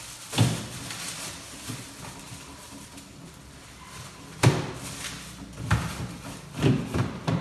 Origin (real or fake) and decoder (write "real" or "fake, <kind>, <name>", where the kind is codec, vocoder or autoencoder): real